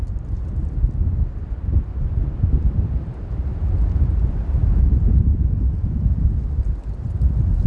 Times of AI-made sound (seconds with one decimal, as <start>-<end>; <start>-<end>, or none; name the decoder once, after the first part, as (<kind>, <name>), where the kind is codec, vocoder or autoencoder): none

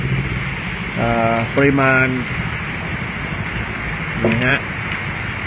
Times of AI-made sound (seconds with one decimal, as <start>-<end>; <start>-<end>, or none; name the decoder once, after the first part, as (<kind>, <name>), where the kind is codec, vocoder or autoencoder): none

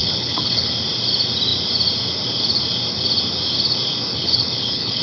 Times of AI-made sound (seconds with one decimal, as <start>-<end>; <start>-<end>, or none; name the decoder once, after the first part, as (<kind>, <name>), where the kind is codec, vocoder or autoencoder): 0.0-0.7 (codec, HILCodec); 4.1-5.0